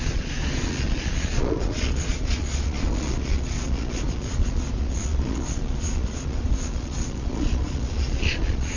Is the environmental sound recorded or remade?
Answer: remade